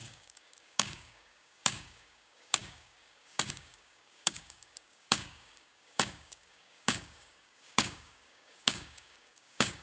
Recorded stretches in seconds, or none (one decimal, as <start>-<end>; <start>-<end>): none

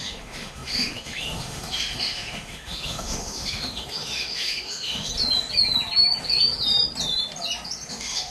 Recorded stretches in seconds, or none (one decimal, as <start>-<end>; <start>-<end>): 5.1-7.9

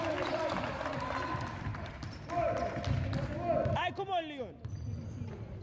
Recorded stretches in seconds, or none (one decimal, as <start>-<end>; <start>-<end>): 0.0-1.7; 2.3-5.6